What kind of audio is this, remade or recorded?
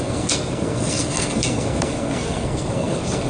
remade